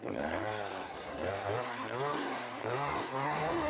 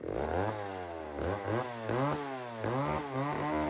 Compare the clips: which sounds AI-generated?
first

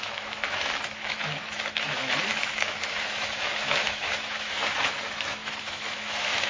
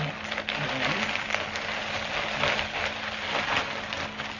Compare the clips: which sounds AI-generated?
first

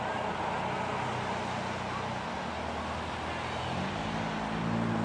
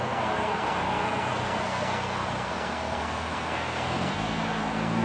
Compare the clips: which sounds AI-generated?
second